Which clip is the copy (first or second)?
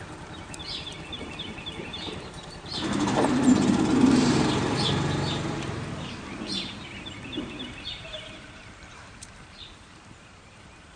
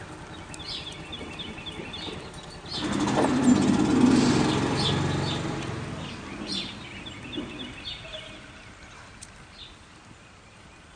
first